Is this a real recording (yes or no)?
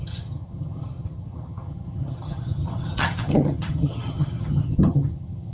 no